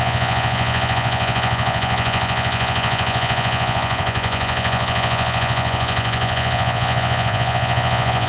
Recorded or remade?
remade